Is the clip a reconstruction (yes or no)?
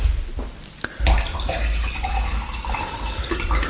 no